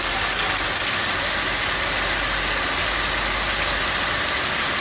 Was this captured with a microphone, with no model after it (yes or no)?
yes